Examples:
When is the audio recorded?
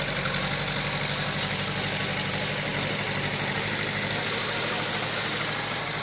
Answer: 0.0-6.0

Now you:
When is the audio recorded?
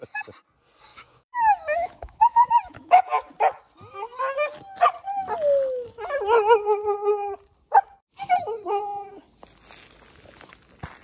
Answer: 0.0-0.9; 3.3-11.0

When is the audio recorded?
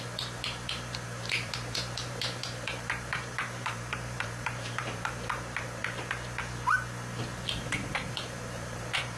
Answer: 5.8-7.5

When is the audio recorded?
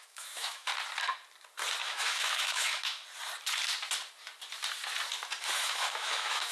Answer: 0.7-1.8; 3.0-5.4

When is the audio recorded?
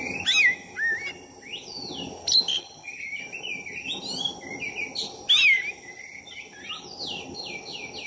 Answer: 0.0-2.6; 3.2-8.1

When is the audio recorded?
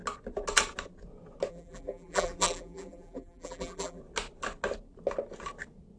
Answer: 0.0-1.5; 4.0-6.0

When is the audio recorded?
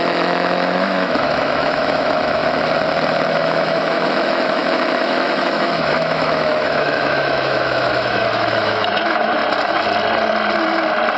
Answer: 2.4-3.3; 9.4-11.2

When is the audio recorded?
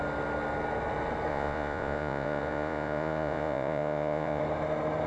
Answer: 0.0-1.3; 4.4-5.1